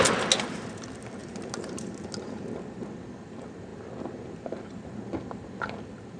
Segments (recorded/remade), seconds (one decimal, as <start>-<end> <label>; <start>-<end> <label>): 0.0-6.2 recorded

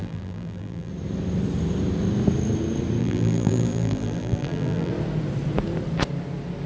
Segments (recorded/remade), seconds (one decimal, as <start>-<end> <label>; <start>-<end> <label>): 0.0-0.9 remade; 0.9-3.0 recorded; 3.0-4.9 remade; 4.9-6.7 recorded

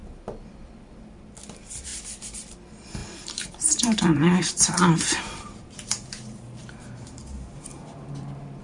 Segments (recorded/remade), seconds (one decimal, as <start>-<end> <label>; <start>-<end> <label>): 0.0-3.0 recorded; 3.0-8.1 remade; 8.1-8.6 recorded

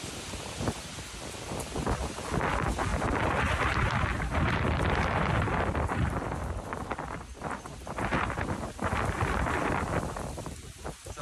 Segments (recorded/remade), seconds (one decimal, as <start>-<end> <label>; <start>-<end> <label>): 0.0-2.9 recorded; 2.9-5.6 remade; 5.6-11.2 recorded

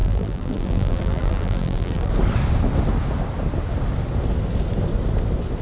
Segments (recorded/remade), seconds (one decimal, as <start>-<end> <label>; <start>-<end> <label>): 0.0-2.1 remade; 2.1-5.6 recorded